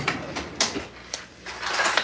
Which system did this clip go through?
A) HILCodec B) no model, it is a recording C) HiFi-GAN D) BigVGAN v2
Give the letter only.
B